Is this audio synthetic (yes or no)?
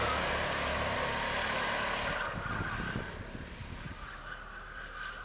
no